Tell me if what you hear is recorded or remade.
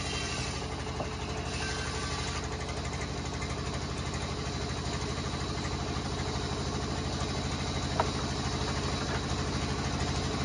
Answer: recorded